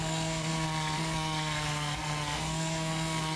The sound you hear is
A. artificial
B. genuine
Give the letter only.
A